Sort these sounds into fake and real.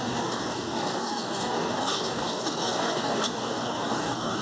fake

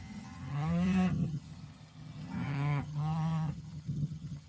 fake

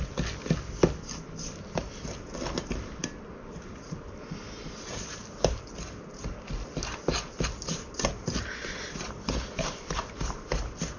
real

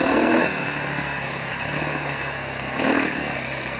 fake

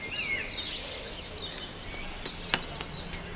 real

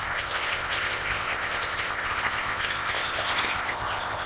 fake